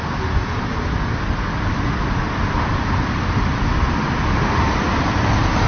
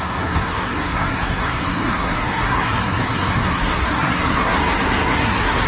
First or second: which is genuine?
first